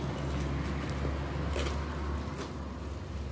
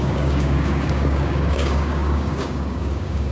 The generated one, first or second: second